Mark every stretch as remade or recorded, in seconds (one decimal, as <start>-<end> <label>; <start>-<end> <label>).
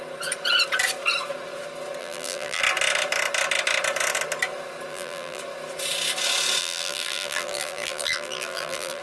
0.0-2.0 recorded; 2.0-2.6 remade; 2.6-4.9 recorded; 4.9-5.4 remade; 5.4-6.6 recorded; 6.6-9.0 remade